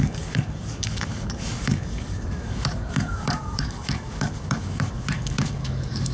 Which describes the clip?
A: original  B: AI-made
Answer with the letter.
B